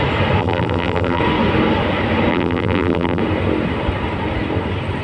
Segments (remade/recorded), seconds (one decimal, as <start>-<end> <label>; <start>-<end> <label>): 0.0-0.4 recorded; 0.4-1.2 remade; 1.2-2.3 recorded; 2.3-3.2 remade; 3.2-5.0 recorded